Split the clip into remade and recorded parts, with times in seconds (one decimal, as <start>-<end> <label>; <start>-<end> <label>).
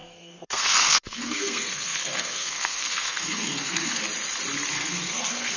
0.0-4.0 remade; 4.0-4.7 recorded; 4.7-5.6 remade